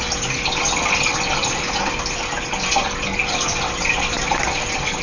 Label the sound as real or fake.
real